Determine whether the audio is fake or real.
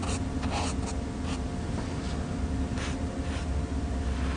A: real